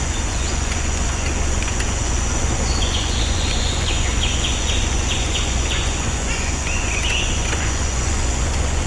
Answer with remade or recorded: remade